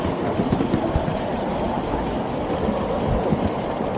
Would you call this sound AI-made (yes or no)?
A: no